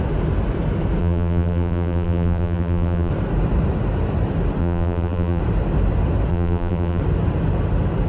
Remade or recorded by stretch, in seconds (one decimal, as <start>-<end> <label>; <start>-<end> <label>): 0.0-1.0 recorded; 1.0-3.1 remade; 3.1-4.6 recorded; 4.6-5.4 remade; 5.4-6.3 recorded; 6.3-7.0 remade; 7.0-8.1 recorded